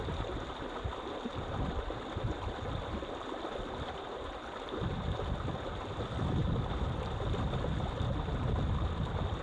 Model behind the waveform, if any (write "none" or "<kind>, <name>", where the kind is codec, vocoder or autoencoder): none